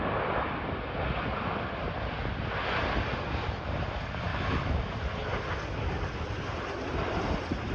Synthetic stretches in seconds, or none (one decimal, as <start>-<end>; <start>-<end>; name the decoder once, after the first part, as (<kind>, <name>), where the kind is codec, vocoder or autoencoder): 4.3-4.9 (autoencoder, DAC-VAE)